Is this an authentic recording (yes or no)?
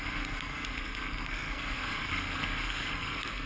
no